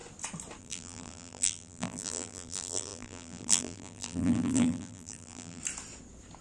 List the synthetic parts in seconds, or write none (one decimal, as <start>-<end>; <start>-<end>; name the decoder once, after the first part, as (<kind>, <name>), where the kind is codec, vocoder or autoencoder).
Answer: 0.6-5.6 (vocoder, BigVGAN v2)